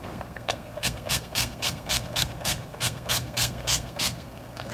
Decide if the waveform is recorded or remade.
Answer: remade